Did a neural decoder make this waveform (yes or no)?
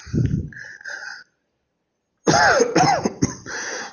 no